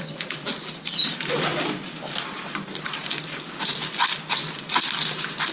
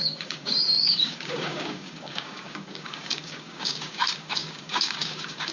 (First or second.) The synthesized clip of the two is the second